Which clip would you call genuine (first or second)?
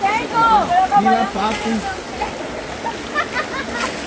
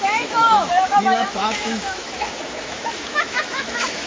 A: first